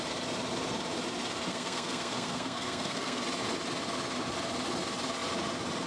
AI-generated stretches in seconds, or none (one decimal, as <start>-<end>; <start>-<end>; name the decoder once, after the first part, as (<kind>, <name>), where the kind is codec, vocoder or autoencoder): 1.5-3.2 (codec, SNAC)